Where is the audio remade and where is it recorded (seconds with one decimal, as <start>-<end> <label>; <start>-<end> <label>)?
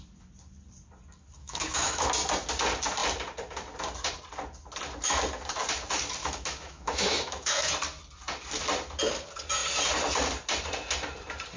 0.0-1.4 recorded; 1.4-2.1 remade; 2.1-6.2 recorded; 6.2-7.7 remade; 7.7-11.6 recorded